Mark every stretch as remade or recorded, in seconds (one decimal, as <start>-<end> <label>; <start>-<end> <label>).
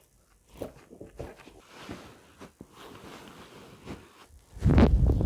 0.0-5.3 recorded